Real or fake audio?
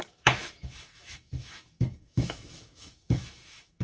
fake